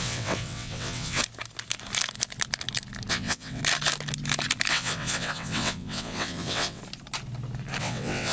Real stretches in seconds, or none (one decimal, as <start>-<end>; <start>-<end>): 1.2-3.1; 3.6-4.7; 6.8-7.8